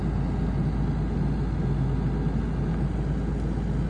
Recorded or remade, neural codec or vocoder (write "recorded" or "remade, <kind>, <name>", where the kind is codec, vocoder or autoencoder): recorded